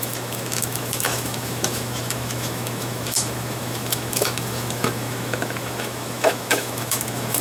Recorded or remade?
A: remade